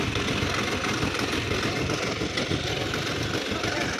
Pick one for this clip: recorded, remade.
recorded